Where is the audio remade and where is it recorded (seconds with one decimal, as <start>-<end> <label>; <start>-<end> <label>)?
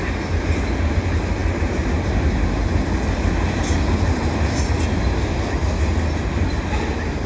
0.0-7.3 recorded